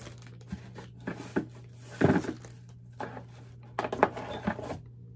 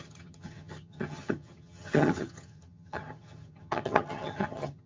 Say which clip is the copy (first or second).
second